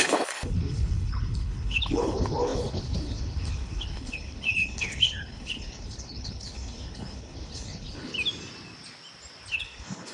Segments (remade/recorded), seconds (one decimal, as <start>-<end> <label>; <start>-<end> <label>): 0.0-8.1 remade; 8.1-9.5 recorded; 9.5-10.1 remade